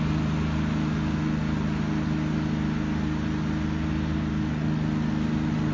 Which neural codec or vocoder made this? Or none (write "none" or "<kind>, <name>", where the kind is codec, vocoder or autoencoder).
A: none